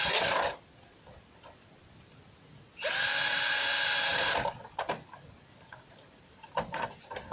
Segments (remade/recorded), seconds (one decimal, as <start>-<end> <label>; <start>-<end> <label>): 0.0-7.3 recorded